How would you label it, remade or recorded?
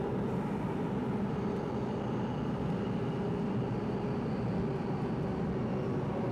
recorded